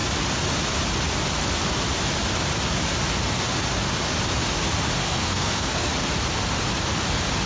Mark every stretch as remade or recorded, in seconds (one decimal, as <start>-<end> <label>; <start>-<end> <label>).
0.0-5.0 recorded; 5.0-5.9 remade; 5.9-7.5 recorded